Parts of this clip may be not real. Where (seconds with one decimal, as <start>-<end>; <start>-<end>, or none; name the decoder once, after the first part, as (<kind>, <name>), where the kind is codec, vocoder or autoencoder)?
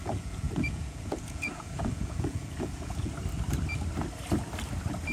0.0-3.1 (vocoder, Vocos)